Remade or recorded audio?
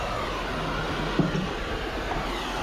recorded